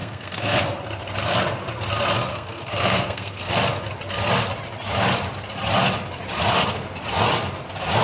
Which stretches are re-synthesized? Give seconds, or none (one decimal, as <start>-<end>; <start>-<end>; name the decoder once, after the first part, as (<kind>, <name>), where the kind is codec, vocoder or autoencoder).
0.0-0.6 (codec, SNAC); 2.3-3.5